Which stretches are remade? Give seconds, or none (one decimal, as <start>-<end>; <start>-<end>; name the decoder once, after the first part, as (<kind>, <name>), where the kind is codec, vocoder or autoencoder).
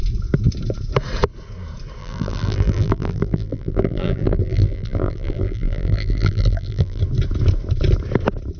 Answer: 2.0-7.0 (vocoder, BigVGAN v2)